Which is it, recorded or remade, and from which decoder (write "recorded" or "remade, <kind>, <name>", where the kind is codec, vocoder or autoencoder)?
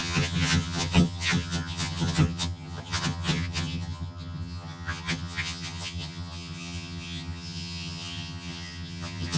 remade, vocoder, HiFi-GAN